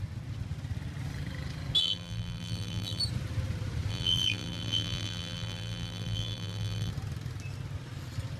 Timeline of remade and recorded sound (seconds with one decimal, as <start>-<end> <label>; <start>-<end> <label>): 0.0-1.8 recorded; 1.8-3.0 remade; 3.0-3.9 recorded; 3.9-6.9 remade; 6.9-8.4 recorded